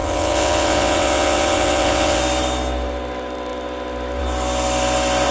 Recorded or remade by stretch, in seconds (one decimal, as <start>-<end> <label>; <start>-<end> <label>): 0.0-2.2 remade; 2.2-5.3 recorded